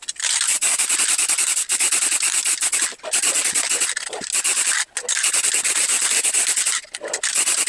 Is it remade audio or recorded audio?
recorded